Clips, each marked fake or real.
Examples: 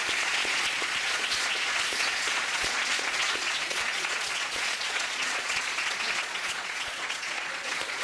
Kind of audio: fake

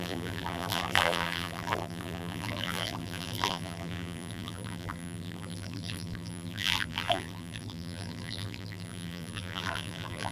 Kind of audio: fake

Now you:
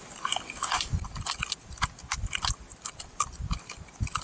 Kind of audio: real